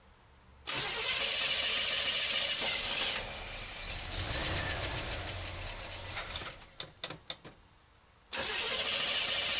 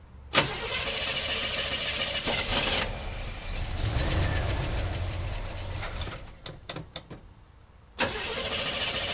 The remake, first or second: second